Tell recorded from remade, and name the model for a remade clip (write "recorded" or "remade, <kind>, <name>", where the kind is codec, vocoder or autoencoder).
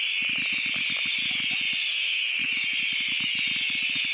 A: recorded